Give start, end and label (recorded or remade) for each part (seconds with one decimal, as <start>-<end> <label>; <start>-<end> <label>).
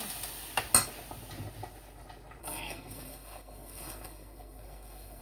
0.0-2.4 recorded; 2.4-5.2 remade